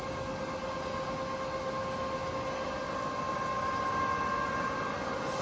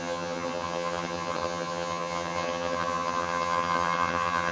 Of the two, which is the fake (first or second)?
second